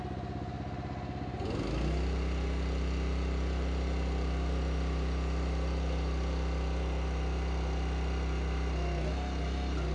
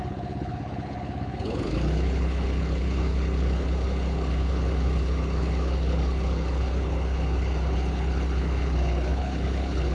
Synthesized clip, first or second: second